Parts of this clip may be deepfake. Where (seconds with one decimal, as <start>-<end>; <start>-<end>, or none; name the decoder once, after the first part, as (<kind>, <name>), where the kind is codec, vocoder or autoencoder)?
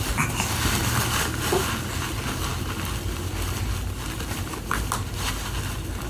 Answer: none